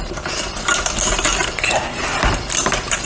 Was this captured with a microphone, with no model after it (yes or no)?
yes